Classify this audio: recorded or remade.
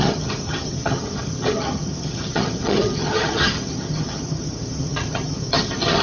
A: remade